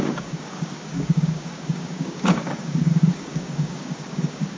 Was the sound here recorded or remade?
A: remade